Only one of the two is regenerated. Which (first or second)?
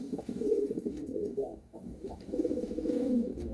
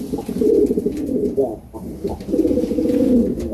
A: first